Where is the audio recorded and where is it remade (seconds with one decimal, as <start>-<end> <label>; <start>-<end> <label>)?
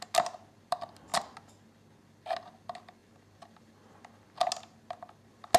0.0-5.6 recorded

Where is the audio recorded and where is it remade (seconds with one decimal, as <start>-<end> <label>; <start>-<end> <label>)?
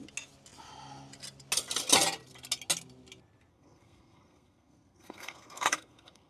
0.0-3.5 recorded; 3.5-6.3 remade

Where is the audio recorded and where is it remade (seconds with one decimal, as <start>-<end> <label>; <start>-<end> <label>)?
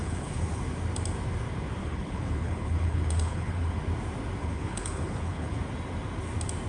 0.0-0.6 remade; 0.6-1.8 recorded; 1.8-3.8 remade; 3.8-4.4 recorded; 4.4-5.6 remade; 5.6-6.7 recorded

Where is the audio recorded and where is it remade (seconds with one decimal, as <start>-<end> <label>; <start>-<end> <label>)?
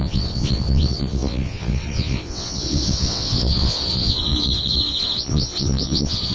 0.0-6.3 remade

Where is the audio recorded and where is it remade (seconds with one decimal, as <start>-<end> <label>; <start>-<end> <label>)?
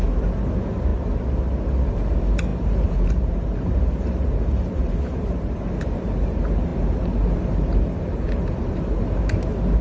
0.0-0.9 remade; 0.9-1.9 recorded; 1.9-9.8 remade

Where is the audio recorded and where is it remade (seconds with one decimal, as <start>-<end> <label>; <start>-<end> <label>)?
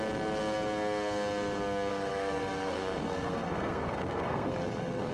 0.0-1.9 recorded; 1.9-5.1 remade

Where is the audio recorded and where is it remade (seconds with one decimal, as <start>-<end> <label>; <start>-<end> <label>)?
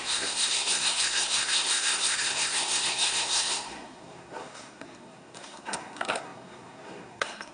0.0-7.5 remade